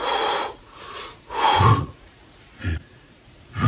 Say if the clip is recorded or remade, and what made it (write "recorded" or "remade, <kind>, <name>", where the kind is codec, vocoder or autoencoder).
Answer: remade, vocoder, Vocos